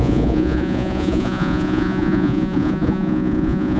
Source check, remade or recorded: remade